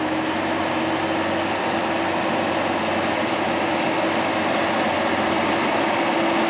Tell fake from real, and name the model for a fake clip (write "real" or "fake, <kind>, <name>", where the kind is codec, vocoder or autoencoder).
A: real